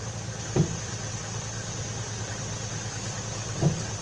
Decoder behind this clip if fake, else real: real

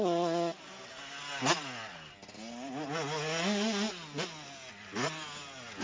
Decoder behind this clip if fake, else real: real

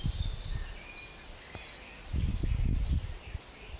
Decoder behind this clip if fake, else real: real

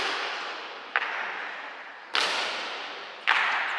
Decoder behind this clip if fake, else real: real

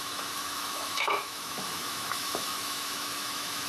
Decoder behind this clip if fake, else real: fake, autoencoder, DAC-VAE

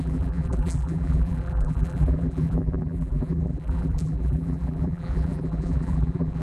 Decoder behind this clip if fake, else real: fake, vocoder, BigVGAN v2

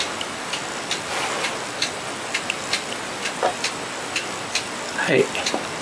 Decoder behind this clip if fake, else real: real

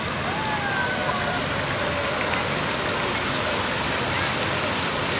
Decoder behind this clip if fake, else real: real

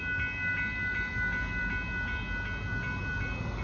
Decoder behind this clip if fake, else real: real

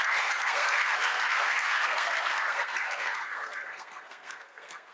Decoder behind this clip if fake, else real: fake, codec, SNAC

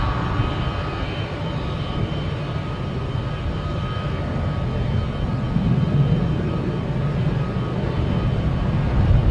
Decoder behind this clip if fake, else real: real